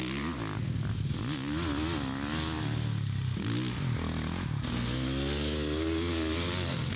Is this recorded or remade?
recorded